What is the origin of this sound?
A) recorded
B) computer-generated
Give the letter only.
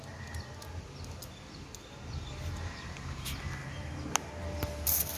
A